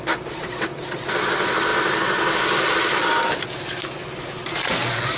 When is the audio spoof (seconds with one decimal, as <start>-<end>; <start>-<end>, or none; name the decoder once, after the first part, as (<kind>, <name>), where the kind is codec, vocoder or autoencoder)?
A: none